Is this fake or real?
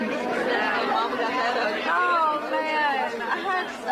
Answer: real